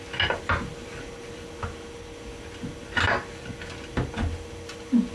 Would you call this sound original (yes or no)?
yes